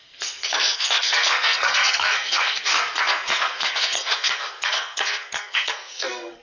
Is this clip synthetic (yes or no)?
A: yes